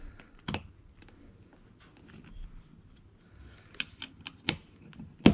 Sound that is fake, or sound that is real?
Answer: real